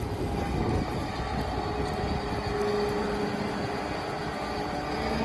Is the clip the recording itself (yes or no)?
yes